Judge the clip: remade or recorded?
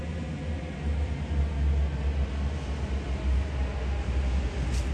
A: recorded